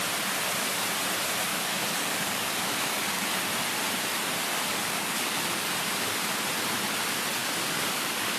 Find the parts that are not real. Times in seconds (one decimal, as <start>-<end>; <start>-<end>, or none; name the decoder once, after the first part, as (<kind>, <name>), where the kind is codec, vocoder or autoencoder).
1.5-3.4 (codec, DAC); 4.5-5.7; 7.4-8.4